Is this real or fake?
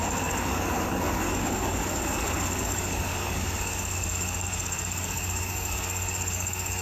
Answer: fake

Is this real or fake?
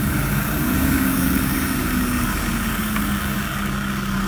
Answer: fake